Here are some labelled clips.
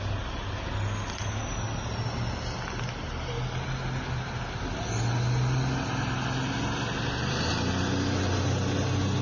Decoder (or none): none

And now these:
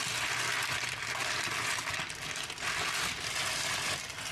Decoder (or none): none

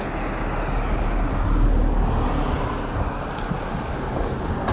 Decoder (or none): none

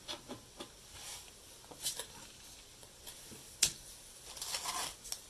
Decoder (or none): none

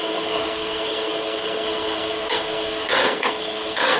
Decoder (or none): codec, SNAC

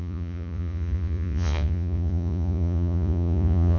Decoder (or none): vocoder, Vocos